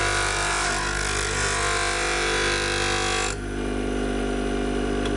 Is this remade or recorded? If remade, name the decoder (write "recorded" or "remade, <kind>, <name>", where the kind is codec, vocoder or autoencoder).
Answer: recorded